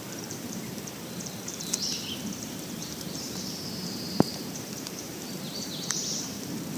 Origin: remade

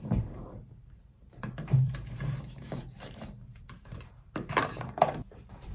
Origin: remade